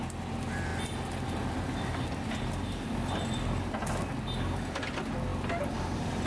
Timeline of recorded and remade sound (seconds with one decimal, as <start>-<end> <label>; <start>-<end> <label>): 0.0-6.3 recorded